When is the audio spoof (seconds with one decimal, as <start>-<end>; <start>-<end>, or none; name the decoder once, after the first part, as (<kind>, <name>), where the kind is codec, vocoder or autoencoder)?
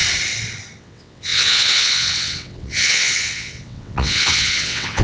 0.8-5.0 (vocoder, WaveNeXt)